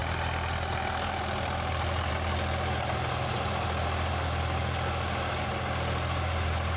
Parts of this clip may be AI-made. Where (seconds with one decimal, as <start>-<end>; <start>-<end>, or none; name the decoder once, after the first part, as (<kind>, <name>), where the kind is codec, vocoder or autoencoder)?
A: none